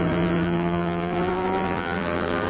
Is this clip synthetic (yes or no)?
yes